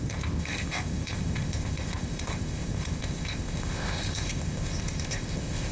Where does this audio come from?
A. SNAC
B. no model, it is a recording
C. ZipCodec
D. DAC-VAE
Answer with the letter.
C